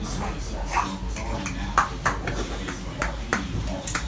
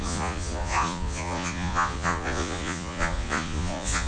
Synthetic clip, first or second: second